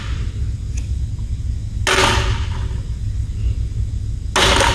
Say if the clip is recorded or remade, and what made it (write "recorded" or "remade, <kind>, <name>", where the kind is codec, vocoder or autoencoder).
recorded